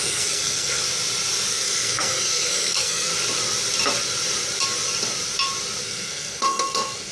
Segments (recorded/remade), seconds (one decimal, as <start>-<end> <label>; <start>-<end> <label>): 0.0-0.9 remade; 0.9-1.5 recorded; 1.5-3.1 remade; 3.1-5.8 recorded; 5.8-7.1 remade

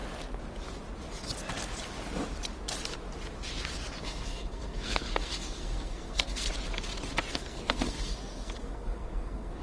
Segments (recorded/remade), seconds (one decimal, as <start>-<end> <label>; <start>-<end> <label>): 0.0-4.0 recorded; 4.0-6.5 remade; 6.5-7.3 recorded; 7.3-9.6 remade

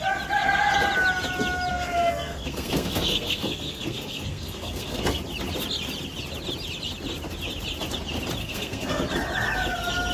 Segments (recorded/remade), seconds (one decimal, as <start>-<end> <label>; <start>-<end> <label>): 0.0-1.7 recorded; 1.7-5.2 remade; 5.2-8.4 recorded; 8.4-9.0 remade; 9.0-10.1 recorded